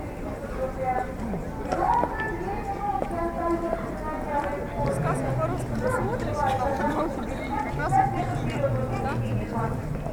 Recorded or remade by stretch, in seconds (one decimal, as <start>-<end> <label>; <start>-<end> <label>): 0.0-10.1 recorded